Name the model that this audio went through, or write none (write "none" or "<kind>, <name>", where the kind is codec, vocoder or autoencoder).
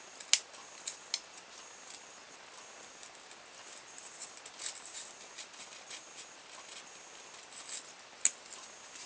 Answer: none